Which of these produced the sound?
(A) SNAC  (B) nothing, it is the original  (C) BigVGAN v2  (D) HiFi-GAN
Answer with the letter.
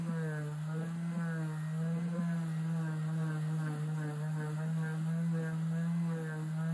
B